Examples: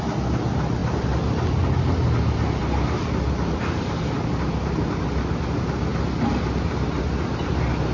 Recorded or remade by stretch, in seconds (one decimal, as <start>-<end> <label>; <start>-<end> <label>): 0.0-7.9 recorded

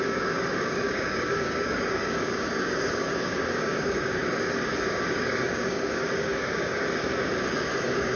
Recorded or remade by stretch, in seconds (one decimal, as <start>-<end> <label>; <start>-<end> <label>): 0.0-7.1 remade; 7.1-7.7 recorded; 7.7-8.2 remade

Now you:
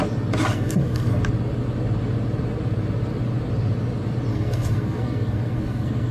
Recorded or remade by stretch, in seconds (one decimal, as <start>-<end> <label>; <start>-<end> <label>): 0.0-0.5 recorded; 0.5-1.2 remade; 1.2-4.3 recorded; 4.3-6.1 remade

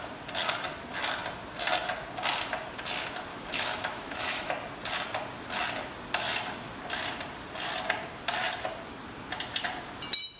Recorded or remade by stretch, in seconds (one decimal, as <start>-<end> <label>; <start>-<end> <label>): 0.0-3.3 recorded; 3.3-4.5 remade; 4.5-10.4 recorded

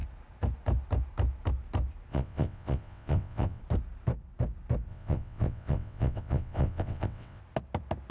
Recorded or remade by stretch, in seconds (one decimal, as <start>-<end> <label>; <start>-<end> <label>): 0.0-2.1 recorded; 2.1-3.6 remade; 3.6-4.9 recorded; 4.9-7.4 remade; 7.4-8.1 recorded